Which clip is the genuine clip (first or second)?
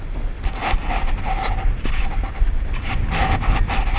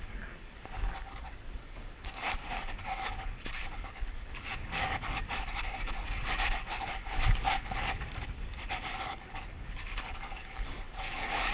first